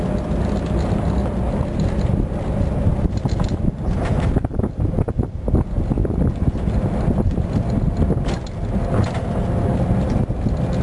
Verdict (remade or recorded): recorded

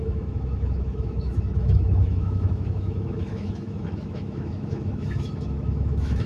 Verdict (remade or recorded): remade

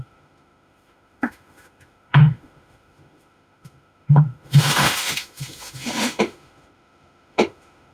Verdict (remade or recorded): remade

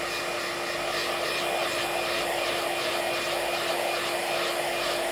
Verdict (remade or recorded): recorded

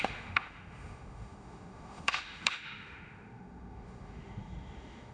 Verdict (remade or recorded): remade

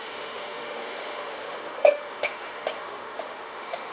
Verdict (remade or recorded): remade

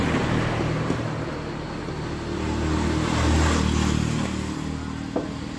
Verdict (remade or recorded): recorded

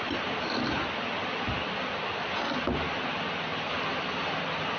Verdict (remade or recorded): recorded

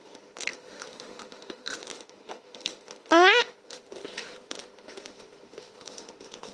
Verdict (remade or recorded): remade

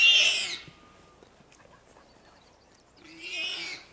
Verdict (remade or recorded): recorded